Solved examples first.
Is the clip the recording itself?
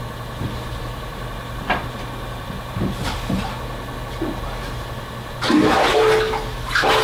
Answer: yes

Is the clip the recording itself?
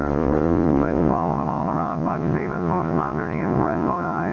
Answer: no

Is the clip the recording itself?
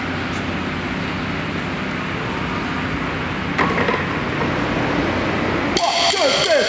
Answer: yes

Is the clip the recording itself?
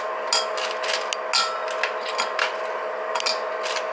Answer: yes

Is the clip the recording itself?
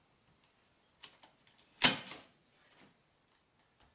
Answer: yes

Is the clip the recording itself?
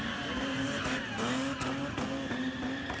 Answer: yes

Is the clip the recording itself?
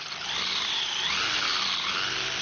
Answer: yes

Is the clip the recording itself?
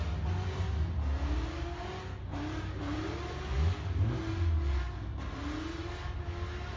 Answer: yes